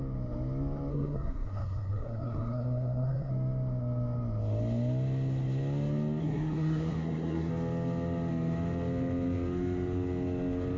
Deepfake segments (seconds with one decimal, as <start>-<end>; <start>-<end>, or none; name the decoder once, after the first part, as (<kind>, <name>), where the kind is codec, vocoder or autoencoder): 0.9-3.3 (codec, SNAC); 6.2-7.5